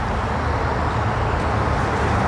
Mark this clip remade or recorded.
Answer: recorded